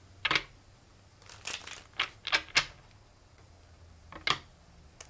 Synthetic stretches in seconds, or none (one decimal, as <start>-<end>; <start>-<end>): none